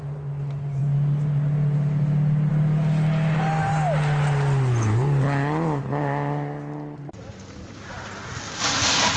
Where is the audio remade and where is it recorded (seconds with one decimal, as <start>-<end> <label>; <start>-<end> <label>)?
0.0-9.2 recorded